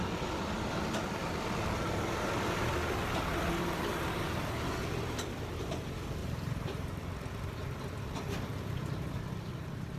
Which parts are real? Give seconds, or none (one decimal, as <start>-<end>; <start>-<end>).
0.0-6.2; 7.0-10.0